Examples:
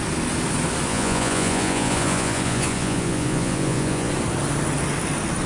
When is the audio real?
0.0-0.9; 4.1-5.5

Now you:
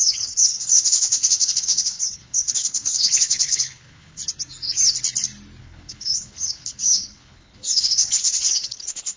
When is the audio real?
4.2-5.6

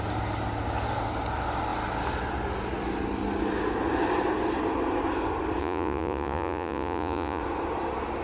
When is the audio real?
0.0-5.6; 7.4-8.2